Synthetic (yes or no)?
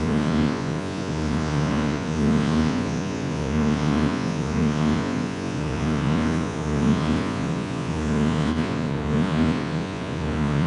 yes